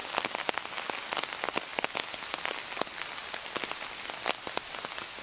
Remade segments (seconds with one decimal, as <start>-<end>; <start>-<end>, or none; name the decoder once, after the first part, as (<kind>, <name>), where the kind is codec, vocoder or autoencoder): none